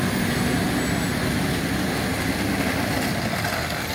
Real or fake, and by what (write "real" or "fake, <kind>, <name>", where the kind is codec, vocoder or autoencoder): real